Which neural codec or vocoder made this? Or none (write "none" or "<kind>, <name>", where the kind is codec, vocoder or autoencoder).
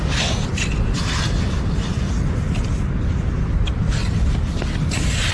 none